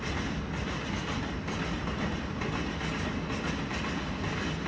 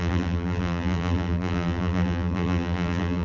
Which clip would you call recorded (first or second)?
first